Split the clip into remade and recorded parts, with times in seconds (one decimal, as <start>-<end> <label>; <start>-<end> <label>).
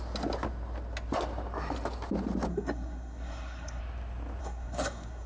0.0-2.5 recorded; 2.5-3.8 remade; 3.8-4.4 recorded; 4.4-5.3 remade